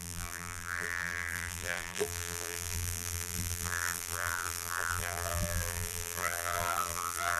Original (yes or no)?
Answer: no